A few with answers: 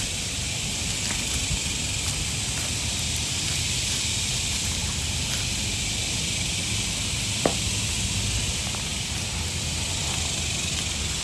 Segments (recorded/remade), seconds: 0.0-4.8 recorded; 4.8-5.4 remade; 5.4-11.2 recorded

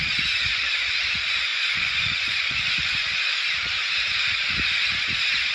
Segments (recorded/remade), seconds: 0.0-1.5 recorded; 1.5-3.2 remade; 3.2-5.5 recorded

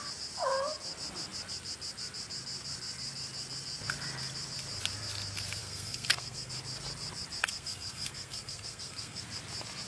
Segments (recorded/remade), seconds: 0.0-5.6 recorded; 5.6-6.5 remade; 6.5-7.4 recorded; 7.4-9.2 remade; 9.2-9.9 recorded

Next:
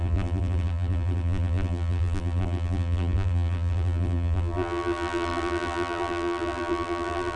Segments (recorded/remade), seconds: 0.0-7.4 remade

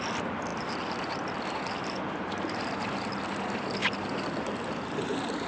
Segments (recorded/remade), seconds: 0.0-0.5 recorded; 0.5-3.3 remade; 3.3-5.5 recorded